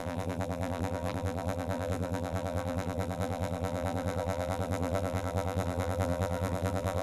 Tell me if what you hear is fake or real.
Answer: fake